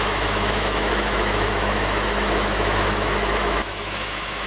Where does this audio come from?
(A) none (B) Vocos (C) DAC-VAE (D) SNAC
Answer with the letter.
C